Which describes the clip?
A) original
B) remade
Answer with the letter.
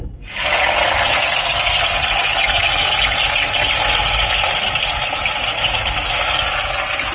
A